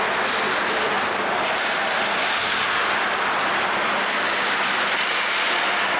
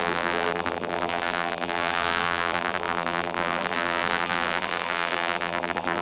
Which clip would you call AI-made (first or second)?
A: second